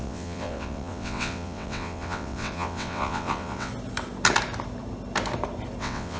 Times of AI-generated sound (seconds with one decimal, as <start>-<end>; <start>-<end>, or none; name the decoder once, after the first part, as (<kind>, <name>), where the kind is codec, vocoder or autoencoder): 0.0-3.7 (vocoder, WaveNeXt); 5.8-6.2